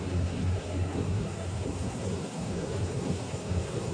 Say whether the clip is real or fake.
fake